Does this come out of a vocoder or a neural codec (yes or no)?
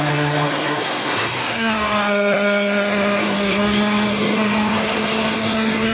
yes